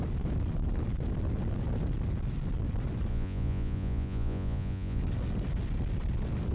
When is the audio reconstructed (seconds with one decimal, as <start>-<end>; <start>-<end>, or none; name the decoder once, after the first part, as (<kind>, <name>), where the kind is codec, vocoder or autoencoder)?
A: 3.1-5.0 (vocoder, Vocos)